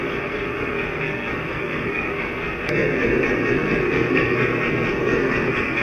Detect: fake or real fake